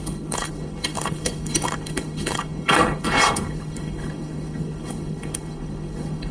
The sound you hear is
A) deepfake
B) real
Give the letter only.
A